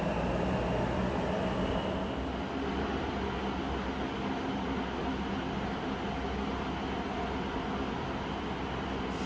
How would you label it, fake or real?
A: real